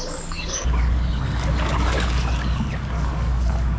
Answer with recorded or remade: remade